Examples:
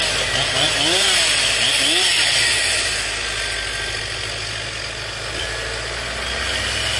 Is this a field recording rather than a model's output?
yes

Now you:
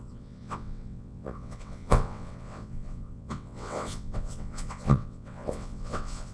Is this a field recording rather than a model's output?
no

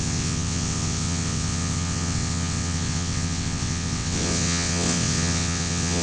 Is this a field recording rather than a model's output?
no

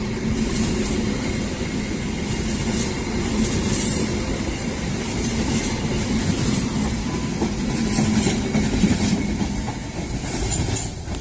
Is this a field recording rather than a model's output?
yes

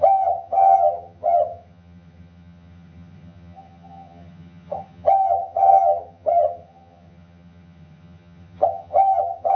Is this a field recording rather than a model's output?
no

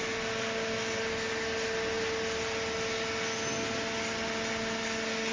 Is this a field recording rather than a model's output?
yes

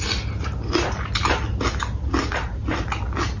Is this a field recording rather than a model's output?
yes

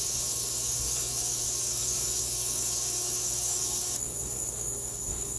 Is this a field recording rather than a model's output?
no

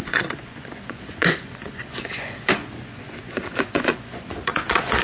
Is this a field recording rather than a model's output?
no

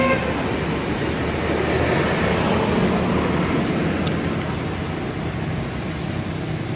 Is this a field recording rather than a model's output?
yes